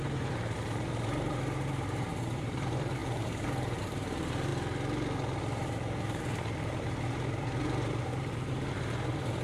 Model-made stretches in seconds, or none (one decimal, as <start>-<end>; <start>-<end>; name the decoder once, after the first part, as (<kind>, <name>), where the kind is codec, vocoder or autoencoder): 0.0-4.5 (vocoder, BigVGAN v2); 5.4-9.4